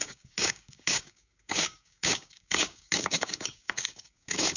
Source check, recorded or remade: remade